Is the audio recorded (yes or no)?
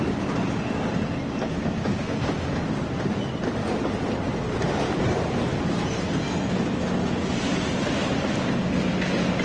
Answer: yes